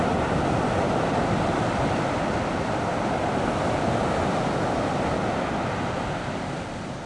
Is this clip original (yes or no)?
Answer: yes